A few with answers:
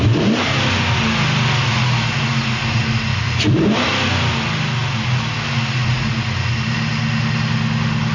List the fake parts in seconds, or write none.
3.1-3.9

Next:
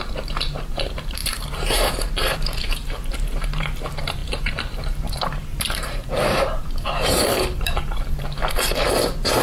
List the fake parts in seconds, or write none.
0.0-9.4

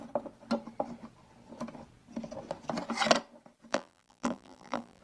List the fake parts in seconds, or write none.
3.7-5.0

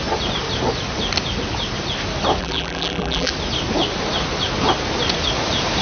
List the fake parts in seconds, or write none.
2.4-3.3